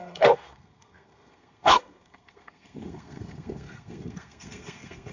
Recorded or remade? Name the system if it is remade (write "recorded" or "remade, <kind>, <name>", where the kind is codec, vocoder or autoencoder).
remade, codec, SNAC